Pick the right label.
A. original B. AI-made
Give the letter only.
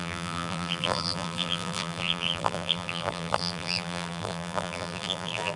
B